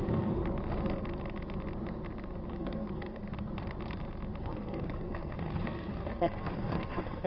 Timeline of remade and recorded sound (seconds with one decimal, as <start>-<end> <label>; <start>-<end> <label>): 0.0-0.4 remade; 0.4-2.5 recorded; 2.5-3.2 remade; 3.2-4.4 recorded; 4.4-7.3 remade